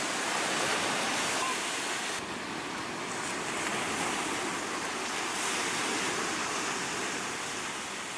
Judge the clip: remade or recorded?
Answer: recorded